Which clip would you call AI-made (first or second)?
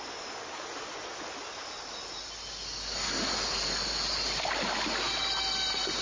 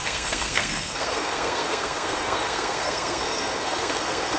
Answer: second